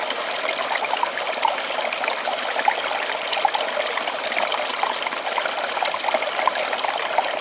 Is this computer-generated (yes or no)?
no